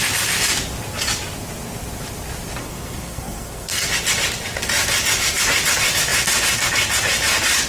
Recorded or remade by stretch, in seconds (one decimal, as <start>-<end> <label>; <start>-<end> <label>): 0.0-2.6 recorded; 2.6-3.9 remade; 3.9-7.7 recorded